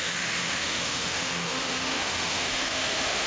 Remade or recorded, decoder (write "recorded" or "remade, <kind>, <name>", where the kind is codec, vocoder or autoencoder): remade, autoencoder, DAC-VAE